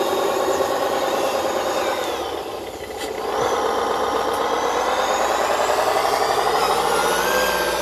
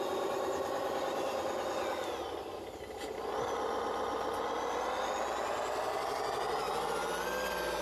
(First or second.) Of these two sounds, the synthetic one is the first